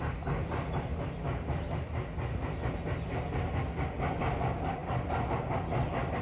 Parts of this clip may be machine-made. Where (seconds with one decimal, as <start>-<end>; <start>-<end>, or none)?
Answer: 0.0-0.9; 4.2-6.2